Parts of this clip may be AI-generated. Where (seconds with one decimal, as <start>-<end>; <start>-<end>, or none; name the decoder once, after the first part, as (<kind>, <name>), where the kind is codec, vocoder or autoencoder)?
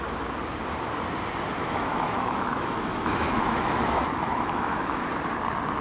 1.6-5.1 (autoencoder, DAC-VAE)